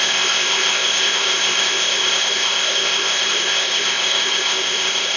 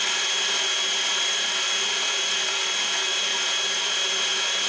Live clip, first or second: second